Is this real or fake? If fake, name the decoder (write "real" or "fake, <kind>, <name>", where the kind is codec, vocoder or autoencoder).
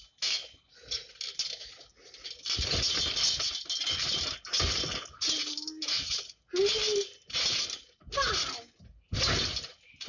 real